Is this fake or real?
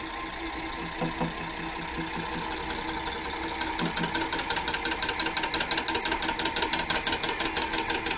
real